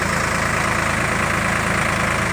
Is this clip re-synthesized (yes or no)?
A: no